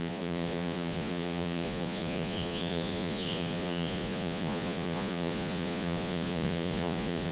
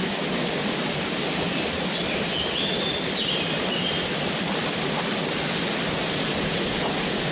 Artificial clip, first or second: first